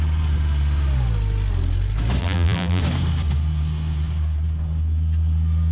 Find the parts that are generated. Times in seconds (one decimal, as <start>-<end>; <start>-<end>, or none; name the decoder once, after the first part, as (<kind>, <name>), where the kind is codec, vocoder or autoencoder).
2.2-2.8 (vocoder, BigVGAN v2)